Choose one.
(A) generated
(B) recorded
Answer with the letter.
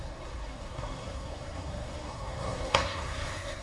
A